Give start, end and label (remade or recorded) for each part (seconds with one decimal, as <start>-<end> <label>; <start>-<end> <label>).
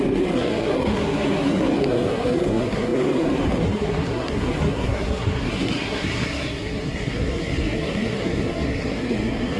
0.0-9.6 remade